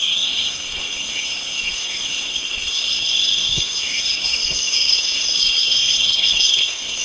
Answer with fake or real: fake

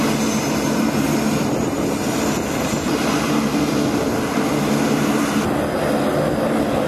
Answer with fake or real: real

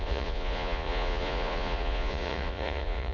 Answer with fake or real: fake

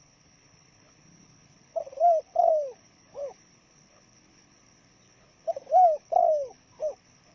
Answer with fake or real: fake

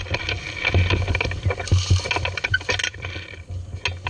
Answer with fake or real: real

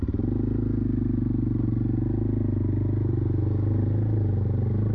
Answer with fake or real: real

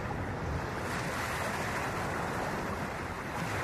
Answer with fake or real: real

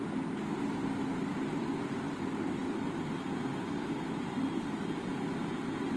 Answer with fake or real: real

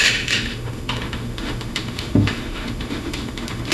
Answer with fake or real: fake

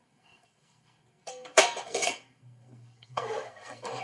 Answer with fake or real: fake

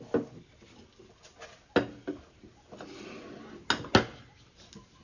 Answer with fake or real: real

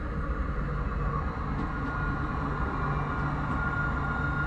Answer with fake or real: real